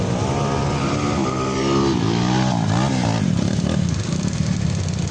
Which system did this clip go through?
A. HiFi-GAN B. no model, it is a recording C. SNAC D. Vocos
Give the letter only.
B